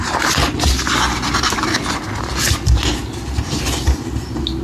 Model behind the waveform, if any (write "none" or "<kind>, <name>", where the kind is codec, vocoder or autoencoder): none